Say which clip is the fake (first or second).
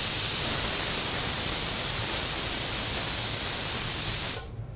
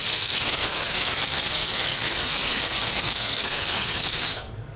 second